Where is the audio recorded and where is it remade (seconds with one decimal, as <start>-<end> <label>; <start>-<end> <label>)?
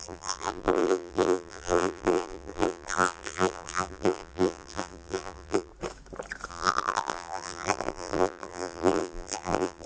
0.0-5.7 remade; 5.7-6.5 recorded; 6.5-9.9 remade